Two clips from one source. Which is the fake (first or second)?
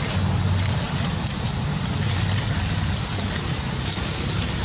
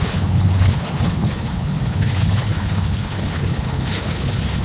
second